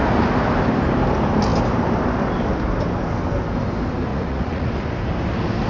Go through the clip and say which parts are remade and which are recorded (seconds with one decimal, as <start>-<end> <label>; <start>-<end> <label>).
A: 0.0-4.1 recorded; 4.1-4.7 remade; 4.7-5.7 recorded